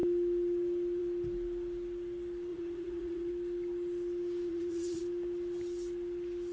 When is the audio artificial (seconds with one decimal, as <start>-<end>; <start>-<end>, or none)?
2.5-3.3; 4.5-5.0